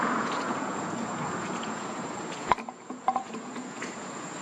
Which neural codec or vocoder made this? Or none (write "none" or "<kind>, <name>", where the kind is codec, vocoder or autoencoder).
vocoder, Vocos